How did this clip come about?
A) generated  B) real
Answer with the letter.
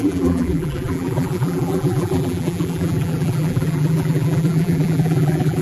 A